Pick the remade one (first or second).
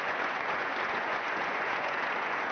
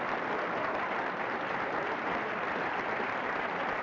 first